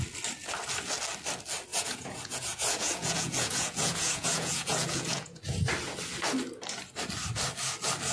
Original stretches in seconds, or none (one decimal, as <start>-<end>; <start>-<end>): 0.0-1.7; 5.4-8.1